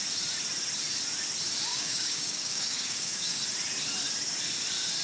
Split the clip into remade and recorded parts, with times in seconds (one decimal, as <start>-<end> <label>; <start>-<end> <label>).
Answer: 0.0-1.7 recorded; 1.7-3.4 remade; 3.4-5.0 recorded